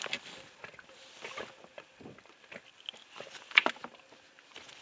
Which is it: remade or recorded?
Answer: recorded